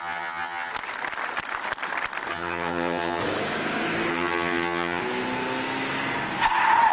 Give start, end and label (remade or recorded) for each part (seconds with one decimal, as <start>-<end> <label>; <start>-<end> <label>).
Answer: 0.0-0.7 remade; 0.7-2.3 recorded; 2.3-3.2 remade; 3.2-4.1 recorded; 4.1-5.0 remade; 5.0-6.9 recorded